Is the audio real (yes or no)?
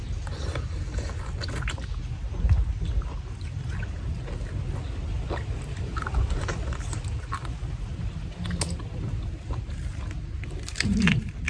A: yes